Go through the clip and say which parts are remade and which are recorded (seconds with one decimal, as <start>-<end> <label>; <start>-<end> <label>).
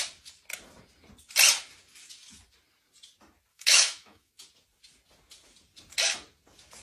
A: 0.0-3.5 recorded; 3.5-4.3 remade; 4.3-6.8 recorded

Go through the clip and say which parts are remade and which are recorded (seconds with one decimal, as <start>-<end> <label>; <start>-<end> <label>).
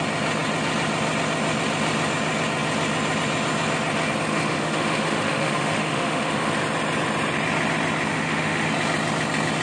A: 0.0-4.3 recorded; 4.3-6.5 remade; 6.5-8.1 recorded; 8.1-8.7 remade; 8.7-9.6 recorded